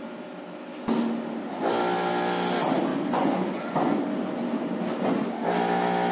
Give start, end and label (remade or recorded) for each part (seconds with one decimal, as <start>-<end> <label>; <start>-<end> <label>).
0.0-2.9 recorded; 2.9-4.0 remade; 4.0-6.1 recorded